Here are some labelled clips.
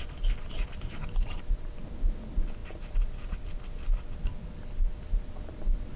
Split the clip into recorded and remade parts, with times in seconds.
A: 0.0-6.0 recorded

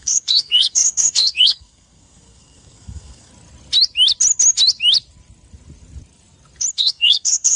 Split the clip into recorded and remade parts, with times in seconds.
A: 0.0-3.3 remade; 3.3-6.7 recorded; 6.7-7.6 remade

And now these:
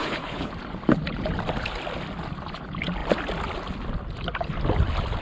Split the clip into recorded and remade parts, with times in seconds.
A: 0.0-0.5 remade; 0.5-5.2 recorded

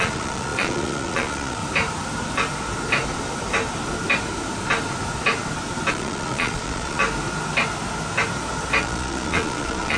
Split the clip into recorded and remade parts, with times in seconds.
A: 0.0-1.6 remade; 1.6-5.9 recorded; 5.9-7.0 remade; 7.0-8.8 recorded; 8.8-10.0 remade

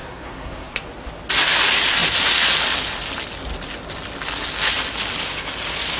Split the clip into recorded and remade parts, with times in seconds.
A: 0.0-0.8 remade; 0.8-6.0 recorded

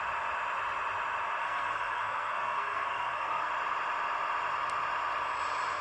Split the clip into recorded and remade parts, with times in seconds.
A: 0.0-1.4 recorded; 1.4-3.5 remade; 3.5-5.8 recorded